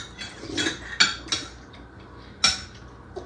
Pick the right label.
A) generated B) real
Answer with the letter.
B